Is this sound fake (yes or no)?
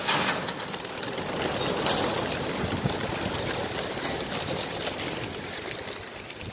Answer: yes